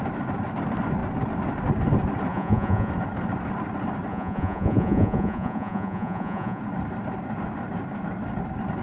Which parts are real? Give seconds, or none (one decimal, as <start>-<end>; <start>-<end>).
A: 0.0-2.3; 2.9-4.1; 6.6-8.8